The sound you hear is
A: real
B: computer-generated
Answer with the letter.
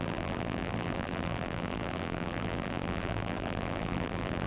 B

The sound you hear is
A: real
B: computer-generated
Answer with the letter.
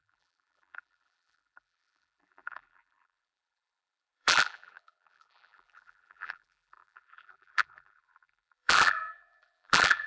B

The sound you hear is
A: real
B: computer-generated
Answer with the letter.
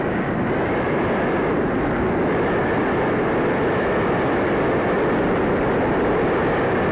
A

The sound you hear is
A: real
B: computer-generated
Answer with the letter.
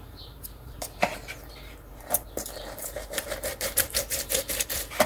B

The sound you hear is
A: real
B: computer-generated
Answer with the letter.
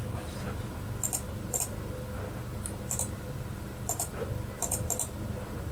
A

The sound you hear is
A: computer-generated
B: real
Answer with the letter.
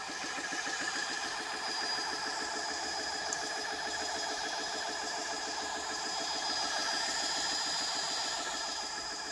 B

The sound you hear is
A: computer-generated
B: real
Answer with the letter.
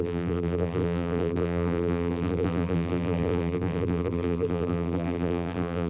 A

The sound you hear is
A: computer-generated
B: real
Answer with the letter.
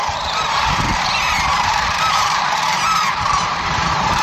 A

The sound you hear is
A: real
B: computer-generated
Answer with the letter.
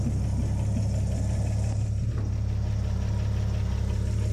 A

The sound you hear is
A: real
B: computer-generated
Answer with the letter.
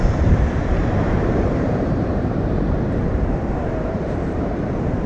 B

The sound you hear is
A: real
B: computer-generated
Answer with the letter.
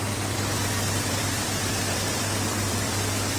B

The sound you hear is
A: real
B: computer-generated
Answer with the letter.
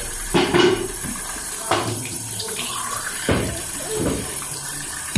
B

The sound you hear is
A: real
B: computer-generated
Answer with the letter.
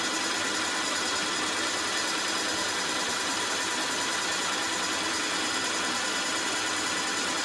A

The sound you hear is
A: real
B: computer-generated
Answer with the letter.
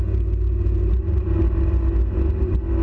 A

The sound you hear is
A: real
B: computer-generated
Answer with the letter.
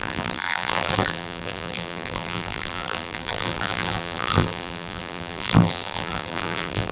B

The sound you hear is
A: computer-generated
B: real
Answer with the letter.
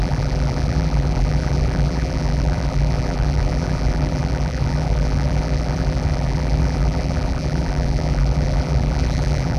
A